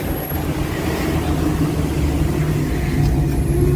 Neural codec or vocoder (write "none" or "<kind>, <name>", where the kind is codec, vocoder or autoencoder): none